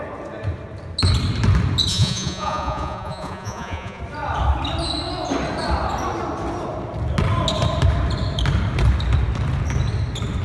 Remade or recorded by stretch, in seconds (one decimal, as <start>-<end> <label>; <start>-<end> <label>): 0.0-1.9 recorded; 1.9-4.0 remade; 4.0-10.4 recorded